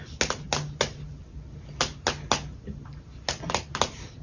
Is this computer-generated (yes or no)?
no